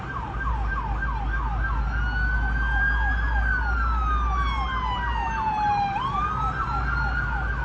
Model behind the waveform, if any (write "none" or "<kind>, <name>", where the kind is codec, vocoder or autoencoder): none